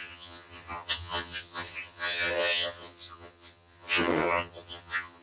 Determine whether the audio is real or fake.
fake